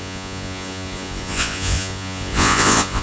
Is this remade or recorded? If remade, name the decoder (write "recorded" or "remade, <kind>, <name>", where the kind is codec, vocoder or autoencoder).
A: remade, vocoder, Vocos